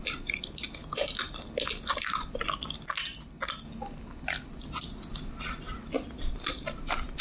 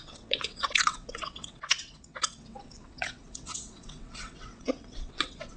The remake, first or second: second